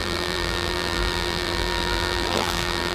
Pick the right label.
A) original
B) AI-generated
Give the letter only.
B